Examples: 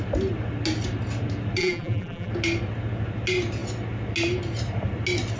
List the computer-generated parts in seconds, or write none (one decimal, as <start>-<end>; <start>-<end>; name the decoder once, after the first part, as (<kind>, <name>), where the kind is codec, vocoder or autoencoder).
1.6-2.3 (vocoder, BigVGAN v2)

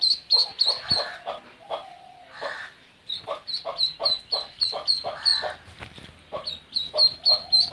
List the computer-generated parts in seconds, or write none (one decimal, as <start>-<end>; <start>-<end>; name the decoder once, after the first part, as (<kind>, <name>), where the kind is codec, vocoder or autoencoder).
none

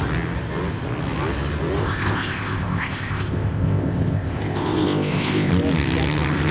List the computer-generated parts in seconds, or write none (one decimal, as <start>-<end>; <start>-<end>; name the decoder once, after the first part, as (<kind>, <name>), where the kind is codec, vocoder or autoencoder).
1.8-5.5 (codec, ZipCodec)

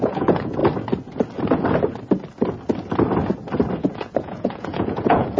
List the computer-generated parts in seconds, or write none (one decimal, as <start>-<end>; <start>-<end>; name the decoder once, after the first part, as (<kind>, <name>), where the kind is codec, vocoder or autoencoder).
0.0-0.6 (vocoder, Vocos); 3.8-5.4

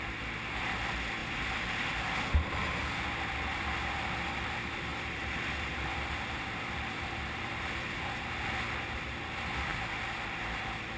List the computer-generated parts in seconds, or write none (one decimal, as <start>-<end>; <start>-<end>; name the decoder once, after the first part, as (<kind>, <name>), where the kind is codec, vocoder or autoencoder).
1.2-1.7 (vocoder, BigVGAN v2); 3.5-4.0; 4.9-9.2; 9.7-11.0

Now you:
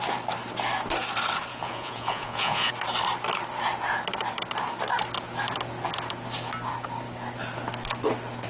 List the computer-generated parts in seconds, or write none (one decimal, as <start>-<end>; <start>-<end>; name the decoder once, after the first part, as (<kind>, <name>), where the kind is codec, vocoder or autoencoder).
1.5-2.7 (vocoder, Vocos)

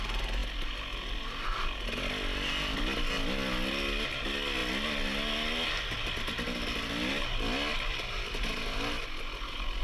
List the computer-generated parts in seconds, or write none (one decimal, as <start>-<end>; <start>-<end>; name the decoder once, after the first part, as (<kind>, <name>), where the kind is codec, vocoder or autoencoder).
none